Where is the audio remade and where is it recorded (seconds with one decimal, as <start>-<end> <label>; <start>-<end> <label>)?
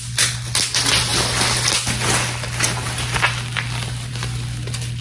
0.0-5.0 recorded